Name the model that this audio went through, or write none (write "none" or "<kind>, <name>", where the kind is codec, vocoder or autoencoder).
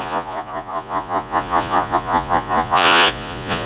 vocoder, Vocos